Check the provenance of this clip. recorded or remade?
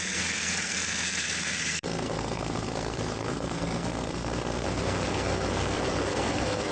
remade